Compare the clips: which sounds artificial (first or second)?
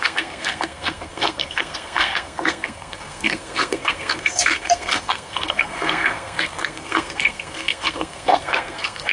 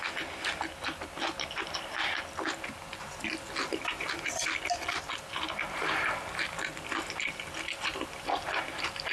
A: first